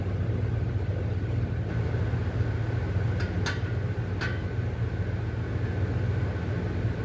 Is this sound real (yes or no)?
yes